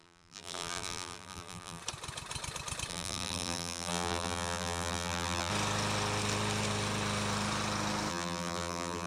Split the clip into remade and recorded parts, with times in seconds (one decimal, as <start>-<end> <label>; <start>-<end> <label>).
0.0-1.8 remade; 1.8-2.9 recorded; 2.9-5.5 remade; 5.5-8.1 recorded; 8.1-9.1 remade